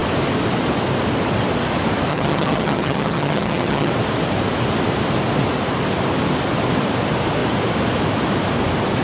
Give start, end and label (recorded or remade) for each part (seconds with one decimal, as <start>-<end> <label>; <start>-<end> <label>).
0.0-2.1 recorded; 2.1-3.9 remade; 3.9-9.0 recorded